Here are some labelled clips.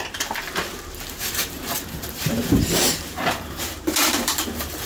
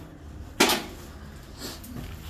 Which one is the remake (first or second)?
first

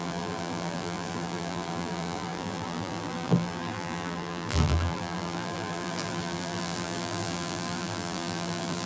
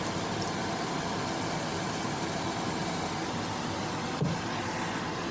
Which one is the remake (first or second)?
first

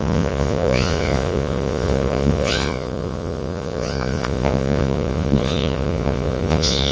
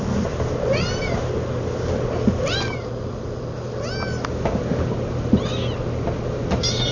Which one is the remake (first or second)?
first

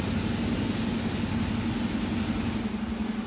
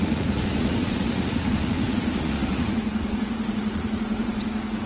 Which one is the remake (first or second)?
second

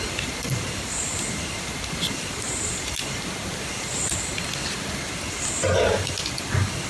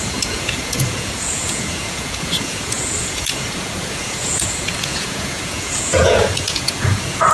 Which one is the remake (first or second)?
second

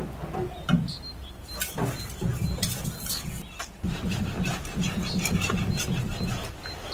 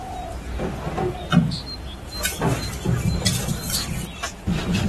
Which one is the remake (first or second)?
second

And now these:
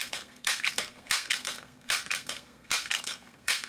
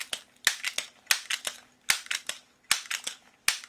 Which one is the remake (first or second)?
first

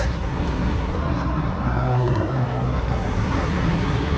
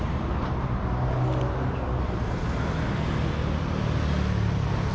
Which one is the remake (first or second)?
first